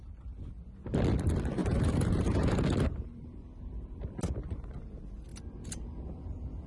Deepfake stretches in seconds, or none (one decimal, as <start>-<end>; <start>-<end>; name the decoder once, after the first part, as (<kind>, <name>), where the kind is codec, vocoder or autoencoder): 1.6-3.2 (vocoder, BigVGAN v2)